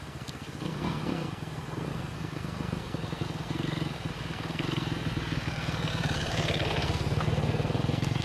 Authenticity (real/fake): fake